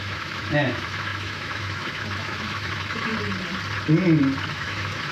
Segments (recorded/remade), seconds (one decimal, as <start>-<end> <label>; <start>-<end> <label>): 0.0-3.1 remade; 3.1-4.5 recorded; 4.5-5.1 remade